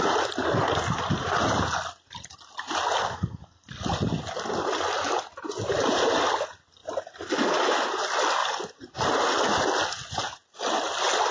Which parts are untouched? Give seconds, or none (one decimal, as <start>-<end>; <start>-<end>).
0.0-3.0; 3.7-11.3